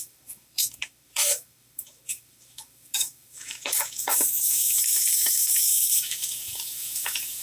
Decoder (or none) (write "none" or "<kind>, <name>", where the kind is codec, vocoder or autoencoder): autoencoder, DAC-VAE